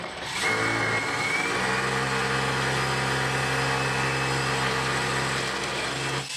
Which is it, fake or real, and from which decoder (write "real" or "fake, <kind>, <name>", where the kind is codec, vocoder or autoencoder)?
real